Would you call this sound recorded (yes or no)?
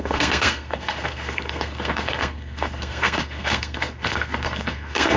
no